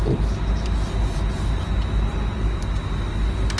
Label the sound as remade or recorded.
recorded